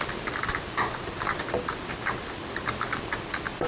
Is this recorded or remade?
recorded